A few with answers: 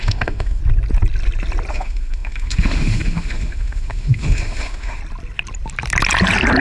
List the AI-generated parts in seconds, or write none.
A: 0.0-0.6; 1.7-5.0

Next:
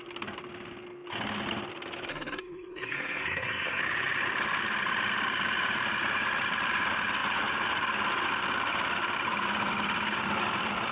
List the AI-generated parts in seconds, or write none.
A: 2.1-3.8